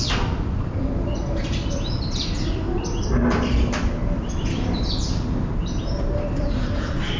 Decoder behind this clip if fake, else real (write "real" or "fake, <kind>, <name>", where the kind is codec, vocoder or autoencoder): fake, vocoder, BigVGAN v2